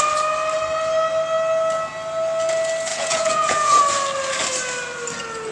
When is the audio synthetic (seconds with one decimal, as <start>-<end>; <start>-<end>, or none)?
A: 2.9-3.8